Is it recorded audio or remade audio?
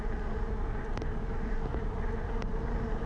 recorded